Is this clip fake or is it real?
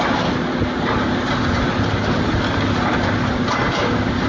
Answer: real